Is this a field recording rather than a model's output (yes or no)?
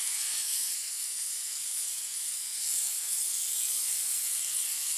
no